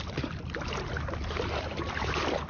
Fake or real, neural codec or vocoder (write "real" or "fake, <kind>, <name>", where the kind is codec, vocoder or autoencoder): real